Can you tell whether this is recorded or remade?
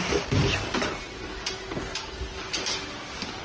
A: recorded